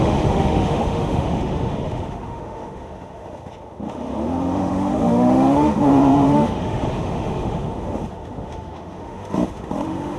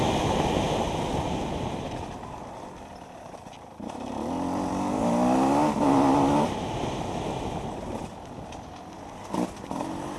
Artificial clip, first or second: first